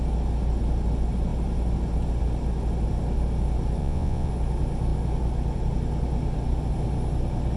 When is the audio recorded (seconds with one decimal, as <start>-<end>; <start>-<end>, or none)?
0.0-3.8; 4.3-7.6